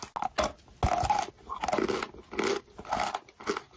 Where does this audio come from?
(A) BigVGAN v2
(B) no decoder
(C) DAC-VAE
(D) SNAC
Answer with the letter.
B